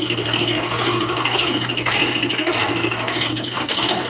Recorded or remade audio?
remade